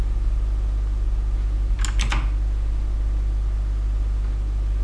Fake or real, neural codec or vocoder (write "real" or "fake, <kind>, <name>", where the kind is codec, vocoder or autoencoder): real